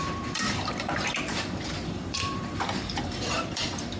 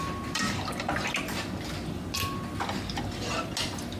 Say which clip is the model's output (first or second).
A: first